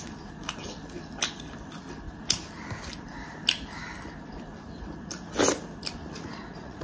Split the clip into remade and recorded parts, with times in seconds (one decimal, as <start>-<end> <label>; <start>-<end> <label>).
0.0-6.0 recorded; 6.0-6.8 remade